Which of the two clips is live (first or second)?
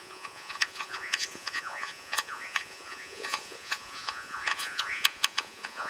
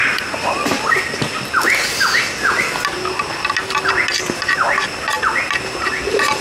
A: second